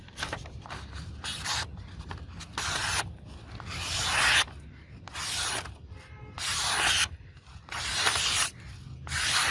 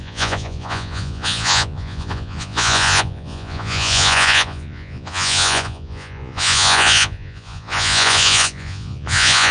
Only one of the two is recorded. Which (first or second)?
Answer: first